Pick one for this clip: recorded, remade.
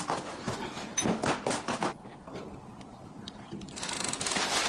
recorded